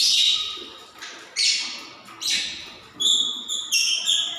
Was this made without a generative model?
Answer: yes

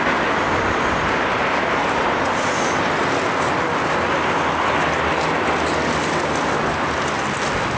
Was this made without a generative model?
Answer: yes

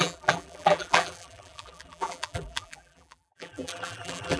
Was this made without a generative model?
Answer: no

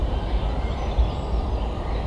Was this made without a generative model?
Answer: yes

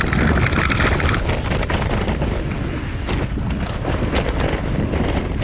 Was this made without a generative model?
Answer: no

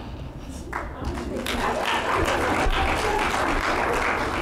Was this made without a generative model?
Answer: yes